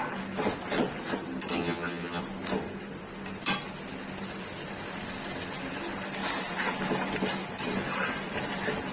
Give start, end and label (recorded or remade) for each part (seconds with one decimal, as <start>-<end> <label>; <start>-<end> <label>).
0.0-1.5 recorded; 1.5-2.2 remade; 2.2-8.9 recorded